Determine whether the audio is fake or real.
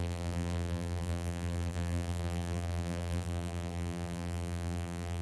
fake